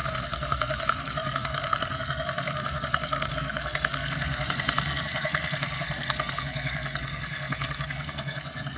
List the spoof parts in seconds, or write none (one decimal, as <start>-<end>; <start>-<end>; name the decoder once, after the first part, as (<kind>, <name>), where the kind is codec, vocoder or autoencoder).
0.0-8.8 (codec, SNAC)

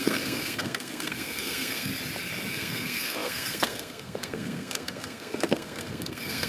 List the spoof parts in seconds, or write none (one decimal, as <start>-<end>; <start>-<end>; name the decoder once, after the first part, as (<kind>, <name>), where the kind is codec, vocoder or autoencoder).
0.0-1.9 (codec, SNAC); 2.5-6.5

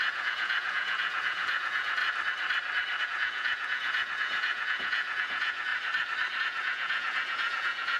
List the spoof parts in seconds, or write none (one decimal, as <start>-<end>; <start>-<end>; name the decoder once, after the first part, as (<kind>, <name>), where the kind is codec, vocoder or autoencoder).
0.0-2.0 (vocoder, Vocos); 3.0-5.7; 6.4-8.0

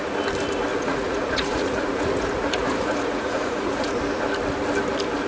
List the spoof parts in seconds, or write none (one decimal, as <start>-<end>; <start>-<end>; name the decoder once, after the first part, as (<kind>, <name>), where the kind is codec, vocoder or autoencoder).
0.7-3.9 (vocoder, Vocos)

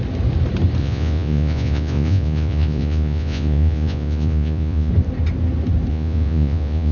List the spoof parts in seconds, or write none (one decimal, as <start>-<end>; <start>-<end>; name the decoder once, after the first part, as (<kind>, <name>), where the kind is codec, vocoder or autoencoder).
0.8-4.9 (vocoder, Vocos); 5.9-6.9

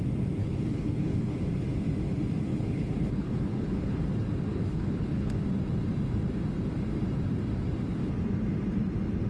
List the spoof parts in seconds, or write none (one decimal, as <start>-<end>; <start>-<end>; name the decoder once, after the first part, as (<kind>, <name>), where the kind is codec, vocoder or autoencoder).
0.4-1.4 (codec, HILCodec); 2.5-4.0; 4.5-5.4